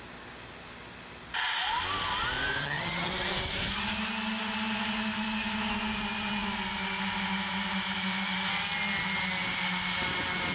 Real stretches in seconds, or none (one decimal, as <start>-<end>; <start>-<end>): 0.0-2.6; 3.1-10.5